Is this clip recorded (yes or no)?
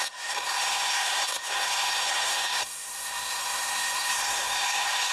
no